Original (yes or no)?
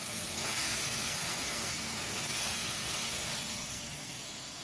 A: no